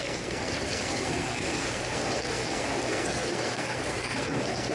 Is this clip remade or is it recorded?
remade